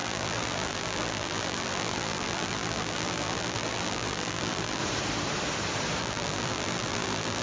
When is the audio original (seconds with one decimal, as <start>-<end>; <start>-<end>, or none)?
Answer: 4.8-6.0